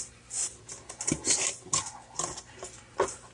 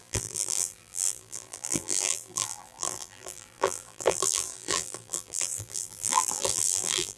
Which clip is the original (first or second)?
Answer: first